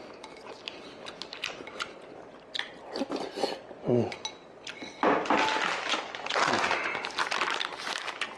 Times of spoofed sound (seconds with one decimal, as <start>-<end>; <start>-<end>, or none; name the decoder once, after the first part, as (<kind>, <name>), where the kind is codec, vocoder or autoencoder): 7.2-7.8 (vocoder, BigVGAN v2)